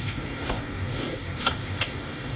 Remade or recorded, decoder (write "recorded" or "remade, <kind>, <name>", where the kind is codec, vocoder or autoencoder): remade, codec, DAC